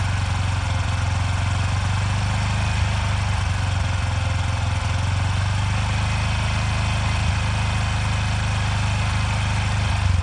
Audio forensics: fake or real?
real